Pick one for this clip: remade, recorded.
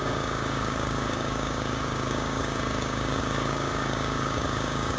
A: remade